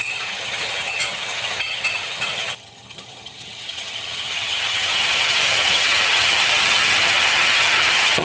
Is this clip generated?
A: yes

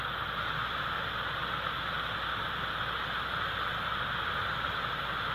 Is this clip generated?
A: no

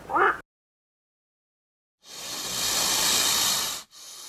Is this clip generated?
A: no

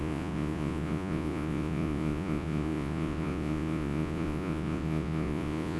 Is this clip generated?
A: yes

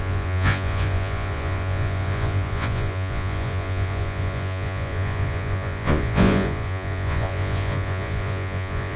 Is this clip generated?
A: yes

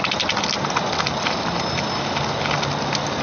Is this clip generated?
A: no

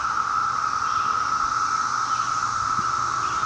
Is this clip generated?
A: no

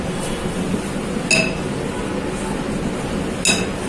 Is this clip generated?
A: no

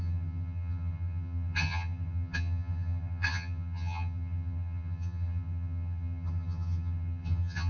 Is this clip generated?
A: yes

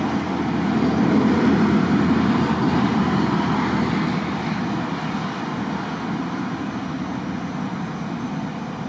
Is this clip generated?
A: no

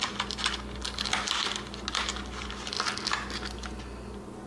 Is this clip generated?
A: no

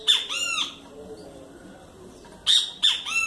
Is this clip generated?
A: no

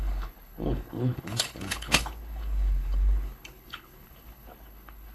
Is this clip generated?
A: yes